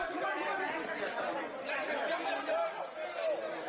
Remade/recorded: recorded